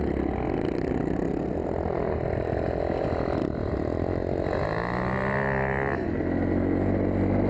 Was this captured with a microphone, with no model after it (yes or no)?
yes